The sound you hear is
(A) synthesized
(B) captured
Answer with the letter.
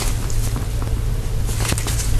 B